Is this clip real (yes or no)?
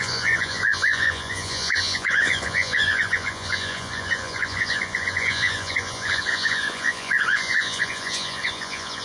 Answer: no